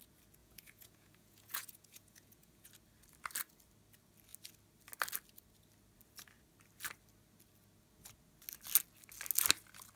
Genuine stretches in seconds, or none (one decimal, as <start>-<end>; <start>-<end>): 0.0-0.4; 2.7-10.0